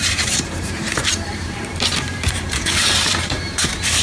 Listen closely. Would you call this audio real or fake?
fake